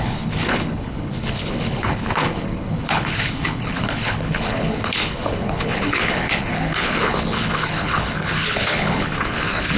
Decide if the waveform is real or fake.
fake